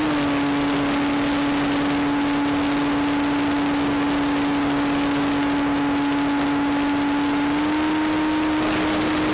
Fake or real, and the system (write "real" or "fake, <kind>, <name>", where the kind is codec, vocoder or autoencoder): real